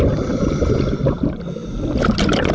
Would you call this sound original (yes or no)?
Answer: yes